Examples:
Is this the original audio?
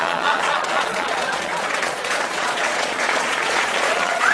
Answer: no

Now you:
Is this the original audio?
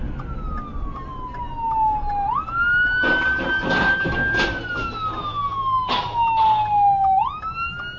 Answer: yes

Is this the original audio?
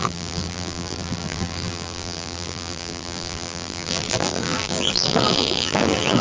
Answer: no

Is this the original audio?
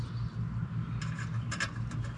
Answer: yes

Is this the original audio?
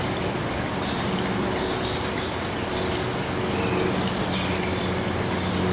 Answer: yes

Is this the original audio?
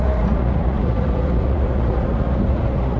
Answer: no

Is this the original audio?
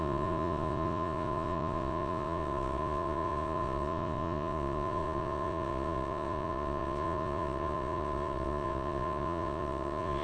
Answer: no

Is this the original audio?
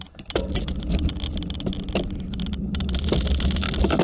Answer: yes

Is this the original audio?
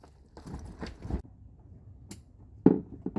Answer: yes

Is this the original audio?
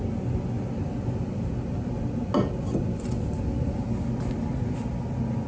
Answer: yes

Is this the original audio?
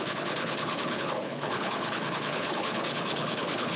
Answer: no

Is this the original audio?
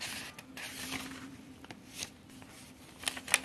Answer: yes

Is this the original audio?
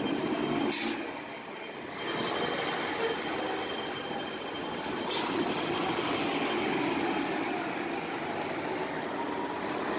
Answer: yes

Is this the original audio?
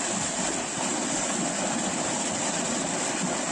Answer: yes